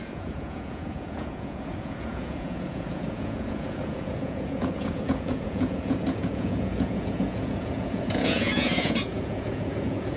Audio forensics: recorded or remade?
remade